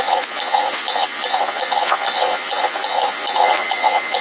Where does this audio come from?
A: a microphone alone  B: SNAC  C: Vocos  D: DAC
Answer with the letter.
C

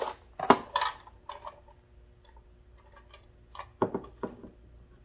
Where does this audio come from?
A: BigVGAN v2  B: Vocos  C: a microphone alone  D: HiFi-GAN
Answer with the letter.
C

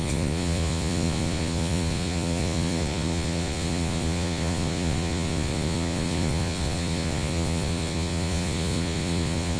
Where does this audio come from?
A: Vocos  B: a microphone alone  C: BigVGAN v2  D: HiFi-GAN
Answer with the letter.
A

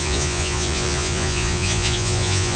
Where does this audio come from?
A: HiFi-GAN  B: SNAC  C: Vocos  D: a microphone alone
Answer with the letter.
C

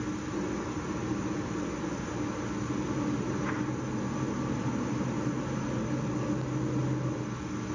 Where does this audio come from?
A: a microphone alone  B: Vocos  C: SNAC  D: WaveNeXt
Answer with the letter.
A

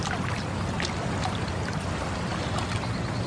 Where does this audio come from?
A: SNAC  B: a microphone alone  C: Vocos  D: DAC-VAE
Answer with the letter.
B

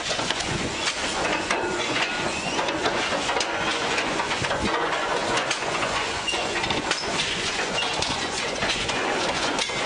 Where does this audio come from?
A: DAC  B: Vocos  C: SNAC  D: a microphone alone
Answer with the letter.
B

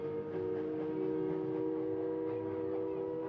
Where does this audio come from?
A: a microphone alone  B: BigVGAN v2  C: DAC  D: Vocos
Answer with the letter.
A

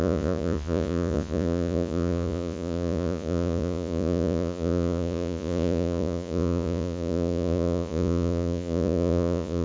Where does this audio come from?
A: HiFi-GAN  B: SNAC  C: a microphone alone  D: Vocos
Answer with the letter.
D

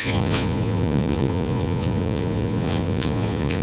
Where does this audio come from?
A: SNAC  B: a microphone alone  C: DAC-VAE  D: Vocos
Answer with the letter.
D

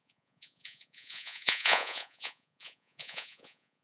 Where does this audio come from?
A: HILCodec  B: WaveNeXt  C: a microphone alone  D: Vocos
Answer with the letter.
D